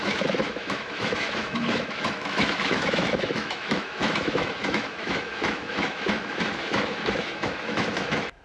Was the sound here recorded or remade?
remade